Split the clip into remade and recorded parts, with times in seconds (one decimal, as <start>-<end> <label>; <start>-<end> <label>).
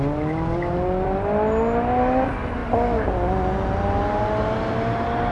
0.0-5.3 recorded